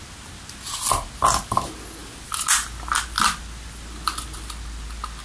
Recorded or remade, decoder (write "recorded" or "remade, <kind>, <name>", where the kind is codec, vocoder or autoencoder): recorded